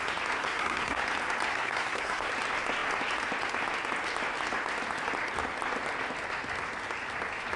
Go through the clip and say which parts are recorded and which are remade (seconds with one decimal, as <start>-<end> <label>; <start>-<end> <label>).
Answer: 0.0-0.4 recorded; 0.4-1.0 remade; 1.0-1.5 recorded; 1.5-2.3 remade; 2.3-7.6 recorded